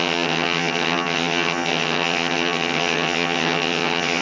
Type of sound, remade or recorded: remade